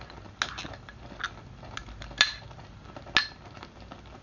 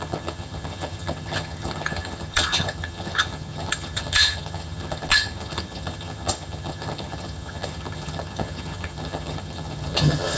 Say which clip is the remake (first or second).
second